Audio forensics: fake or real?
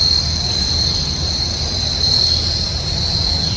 real